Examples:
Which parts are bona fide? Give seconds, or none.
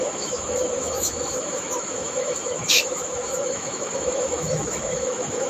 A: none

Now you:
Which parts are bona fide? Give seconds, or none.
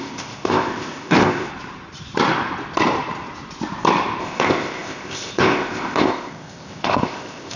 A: 1.5-4.2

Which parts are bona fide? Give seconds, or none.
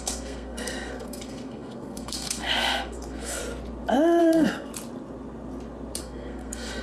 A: 3.4-4.2; 4.7-6.0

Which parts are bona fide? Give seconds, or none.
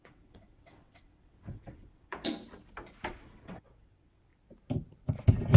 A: 2.3-3.1; 4.3-5.6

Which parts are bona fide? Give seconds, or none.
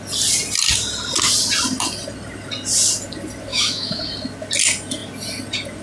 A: 0.0-3.5; 4.0-5.8